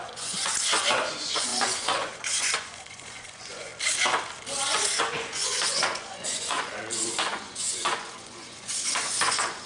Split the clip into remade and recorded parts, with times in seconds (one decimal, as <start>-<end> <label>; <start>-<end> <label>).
0.0-3.7 remade; 3.7-4.6 recorded; 4.6-9.7 remade